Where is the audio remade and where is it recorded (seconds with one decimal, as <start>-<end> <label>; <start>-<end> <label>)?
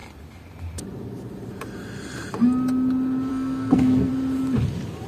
0.0-3.3 recorded; 3.3-4.1 remade; 4.1-5.1 recorded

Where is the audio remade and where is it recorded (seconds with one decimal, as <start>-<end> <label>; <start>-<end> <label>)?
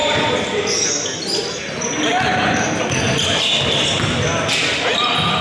0.0-0.9 remade; 0.9-5.4 recorded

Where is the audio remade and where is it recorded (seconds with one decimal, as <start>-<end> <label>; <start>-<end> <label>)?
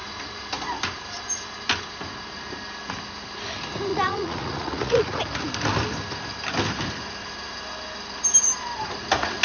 0.0-3.9 recorded; 3.9-5.2 remade; 5.2-9.4 recorded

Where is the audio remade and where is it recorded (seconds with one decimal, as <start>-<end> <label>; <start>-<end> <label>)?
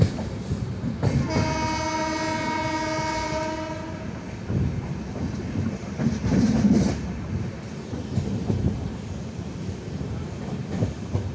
0.0-5.4 recorded; 5.4-10.6 remade; 10.6-11.3 recorded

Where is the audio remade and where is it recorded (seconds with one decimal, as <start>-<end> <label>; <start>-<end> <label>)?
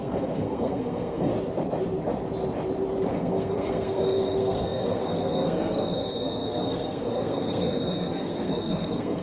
0.0-1.3 remade; 1.3-3.1 recorded; 3.1-9.2 remade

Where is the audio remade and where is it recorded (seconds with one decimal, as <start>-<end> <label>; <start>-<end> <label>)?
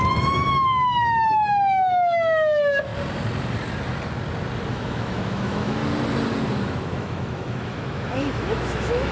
0.0-2.9 remade; 2.9-4.7 recorded; 4.7-5.8 remade; 5.8-6.5 recorded; 6.5-9.1 remade